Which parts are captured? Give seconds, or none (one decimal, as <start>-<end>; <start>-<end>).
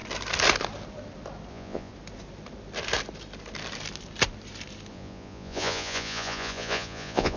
0.0-1.5; 1.9-4.9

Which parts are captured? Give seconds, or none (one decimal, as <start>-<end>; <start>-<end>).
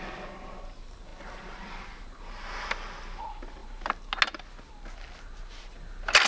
0.0-6.3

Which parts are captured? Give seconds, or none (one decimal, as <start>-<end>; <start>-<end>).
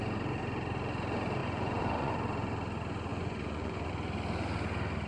0.0-1.4; 2.1-3.1; 3.9-5.1